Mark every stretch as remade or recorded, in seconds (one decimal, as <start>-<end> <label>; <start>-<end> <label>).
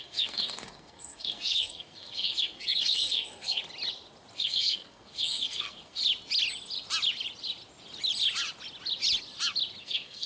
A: 0.0-3.6 remade; 3.6-4.3 recorded; 4.3-6.0 remade; 6.0-9.8 recorded; 9.8-10.3 remade